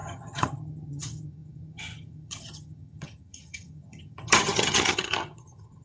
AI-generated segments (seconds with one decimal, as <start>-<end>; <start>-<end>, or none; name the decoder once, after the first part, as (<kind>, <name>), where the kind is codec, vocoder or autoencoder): 0.0-5.8 (vocoder, HiFi-GAN)